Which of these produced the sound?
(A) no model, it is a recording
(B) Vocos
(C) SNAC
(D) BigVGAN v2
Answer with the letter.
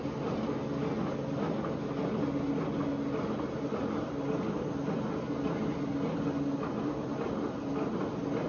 A